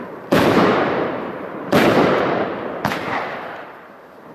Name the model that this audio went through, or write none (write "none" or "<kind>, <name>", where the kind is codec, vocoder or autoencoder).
vocoder, BigVGAN v2